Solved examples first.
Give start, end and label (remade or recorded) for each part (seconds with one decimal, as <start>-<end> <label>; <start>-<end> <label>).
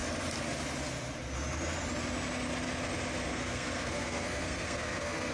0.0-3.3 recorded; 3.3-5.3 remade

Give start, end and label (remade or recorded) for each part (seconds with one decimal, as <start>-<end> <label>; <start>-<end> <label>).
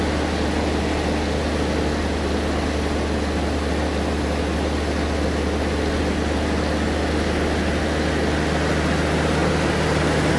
0.0-10.4 recorded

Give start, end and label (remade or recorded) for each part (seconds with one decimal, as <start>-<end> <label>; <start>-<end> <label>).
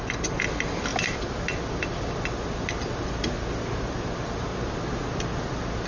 0.0-0.9 recorded; 0.9-2.1 remade; 2.1-5.9 recorded